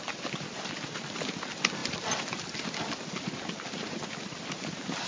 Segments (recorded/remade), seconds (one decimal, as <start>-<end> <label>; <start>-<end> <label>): 0.0-5.1 recorded